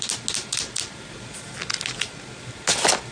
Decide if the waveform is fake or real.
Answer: real